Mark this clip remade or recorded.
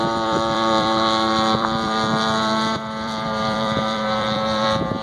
remade